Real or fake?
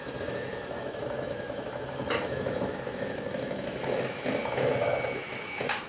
fake